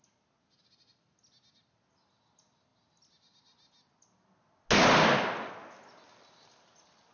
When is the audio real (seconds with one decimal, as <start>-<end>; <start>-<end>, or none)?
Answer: 0.0-7.1